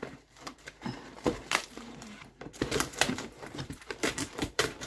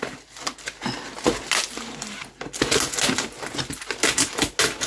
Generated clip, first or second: first